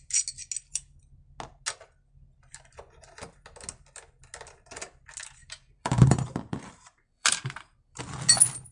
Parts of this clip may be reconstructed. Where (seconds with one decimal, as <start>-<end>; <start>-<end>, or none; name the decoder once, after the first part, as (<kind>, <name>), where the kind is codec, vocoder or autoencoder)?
5.4-8.0 (vocoder, BigVGAN v2)